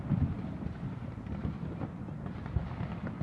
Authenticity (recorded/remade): recorded